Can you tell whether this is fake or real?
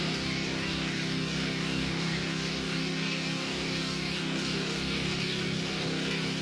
fake